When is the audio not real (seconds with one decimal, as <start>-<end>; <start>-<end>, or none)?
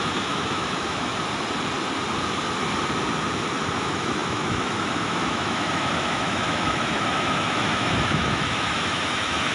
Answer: 0.0-1.1; 3.8-9.5